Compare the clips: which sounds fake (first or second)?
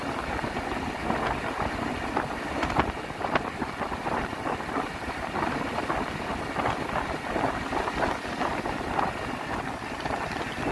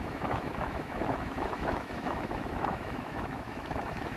second